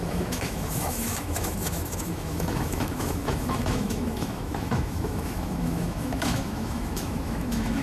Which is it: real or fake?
fake